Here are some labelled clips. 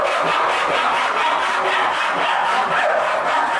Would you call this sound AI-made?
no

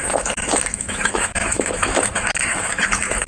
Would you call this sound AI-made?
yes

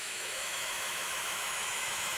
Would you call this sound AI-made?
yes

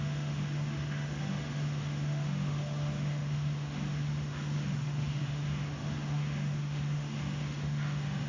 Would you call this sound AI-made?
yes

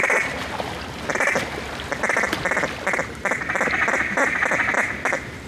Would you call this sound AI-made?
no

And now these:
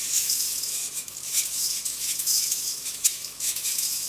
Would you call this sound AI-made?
yes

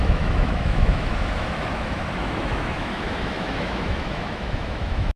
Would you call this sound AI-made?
yes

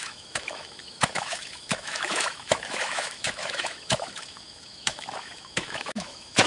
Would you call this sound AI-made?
yes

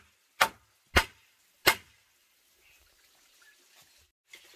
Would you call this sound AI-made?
no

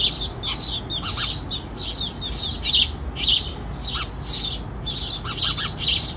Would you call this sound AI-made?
no